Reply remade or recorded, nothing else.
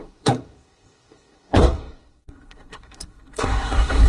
remade